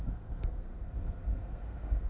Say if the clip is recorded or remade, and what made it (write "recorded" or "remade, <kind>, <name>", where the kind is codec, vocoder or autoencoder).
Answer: remade, codec, SNAC